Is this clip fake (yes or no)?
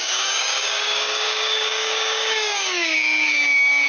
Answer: yes